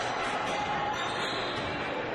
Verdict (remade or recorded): recorded